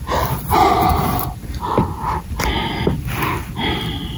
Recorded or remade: remade